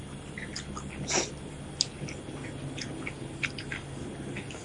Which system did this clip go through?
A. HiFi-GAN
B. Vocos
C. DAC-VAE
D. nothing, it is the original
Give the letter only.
D